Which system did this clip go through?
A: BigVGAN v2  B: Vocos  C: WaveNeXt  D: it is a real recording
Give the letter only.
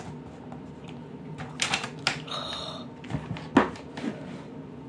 D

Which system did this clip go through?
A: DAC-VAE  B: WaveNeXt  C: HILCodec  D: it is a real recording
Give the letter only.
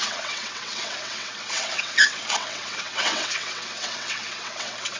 B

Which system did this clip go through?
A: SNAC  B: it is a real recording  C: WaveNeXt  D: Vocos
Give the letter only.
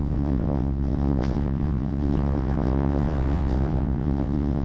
C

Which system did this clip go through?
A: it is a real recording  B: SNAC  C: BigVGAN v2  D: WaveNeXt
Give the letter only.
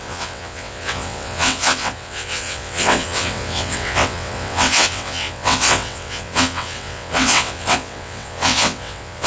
D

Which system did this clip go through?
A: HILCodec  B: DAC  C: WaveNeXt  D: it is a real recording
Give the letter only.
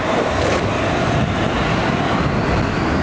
D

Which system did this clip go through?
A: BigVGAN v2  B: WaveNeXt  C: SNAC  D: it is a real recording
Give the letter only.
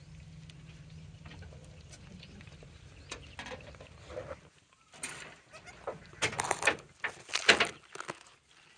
D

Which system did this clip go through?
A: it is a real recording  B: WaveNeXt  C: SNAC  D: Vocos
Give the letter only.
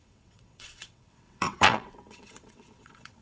B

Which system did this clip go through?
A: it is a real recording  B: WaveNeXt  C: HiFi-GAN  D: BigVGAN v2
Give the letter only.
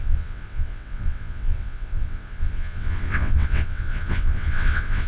B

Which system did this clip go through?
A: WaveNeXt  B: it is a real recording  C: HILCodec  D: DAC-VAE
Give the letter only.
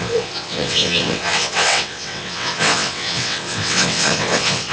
A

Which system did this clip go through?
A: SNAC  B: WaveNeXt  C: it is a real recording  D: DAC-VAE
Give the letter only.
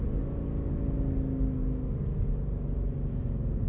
C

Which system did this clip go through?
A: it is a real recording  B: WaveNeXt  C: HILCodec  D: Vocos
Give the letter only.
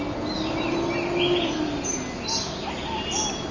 A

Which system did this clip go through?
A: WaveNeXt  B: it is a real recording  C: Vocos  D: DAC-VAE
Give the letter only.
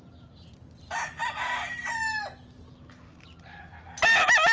B